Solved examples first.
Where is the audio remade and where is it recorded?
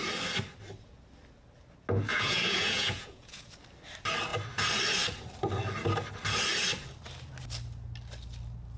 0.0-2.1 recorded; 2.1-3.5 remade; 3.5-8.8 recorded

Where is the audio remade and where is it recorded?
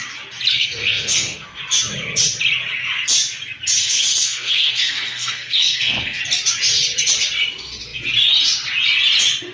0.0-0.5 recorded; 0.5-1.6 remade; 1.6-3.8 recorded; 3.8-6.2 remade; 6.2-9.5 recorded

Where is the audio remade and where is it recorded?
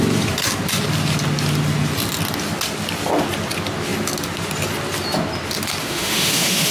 0.0-5.8 recorded; 5.8-6.7 remade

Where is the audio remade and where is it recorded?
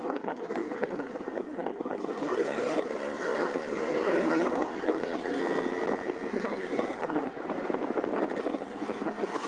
0.0-5.4 remade; 5.4-6.3 recorded; 6.3-7.4 remade; 7.4-8.4 recorded; 8.4-9.5 remade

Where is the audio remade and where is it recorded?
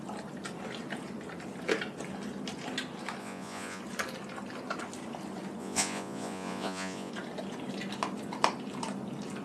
0.0-3.2 recorded; 3.2-3.8 remade; 3.8-5.6 recorded; 5.6-7.1 remade; 7.1-9.4 recorded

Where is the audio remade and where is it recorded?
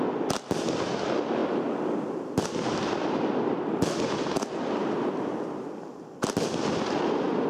0.0-7.5 recorded